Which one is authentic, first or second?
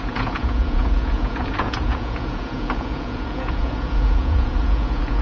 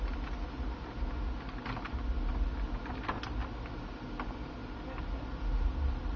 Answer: second